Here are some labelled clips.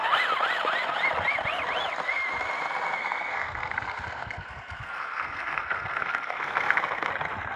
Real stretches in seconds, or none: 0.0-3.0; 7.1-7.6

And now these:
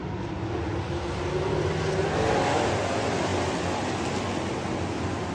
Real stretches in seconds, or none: 0.0-5.3

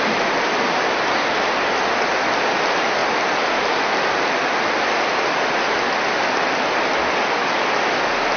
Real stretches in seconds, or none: 0.0-8.4

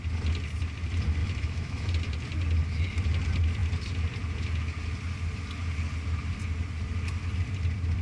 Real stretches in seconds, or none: 0.0-1.2; 1.9-8.0

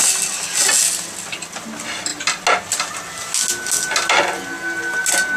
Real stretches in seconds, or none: 0.0-5.4

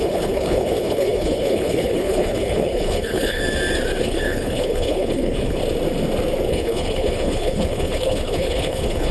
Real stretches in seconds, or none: 3.4-4.0; 5.6-6.5

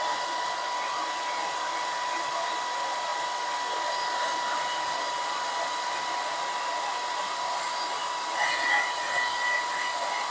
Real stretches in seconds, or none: 0.0-1.4; 2.3-10.3